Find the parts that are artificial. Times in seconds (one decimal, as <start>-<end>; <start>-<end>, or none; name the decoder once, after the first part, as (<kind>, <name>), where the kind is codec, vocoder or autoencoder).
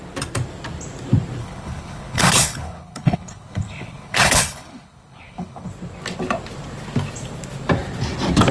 1.4-5.7 (codec, HILCodec)